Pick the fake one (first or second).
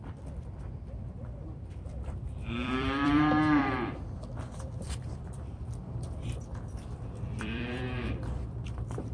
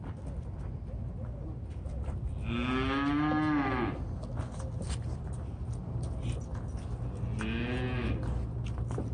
first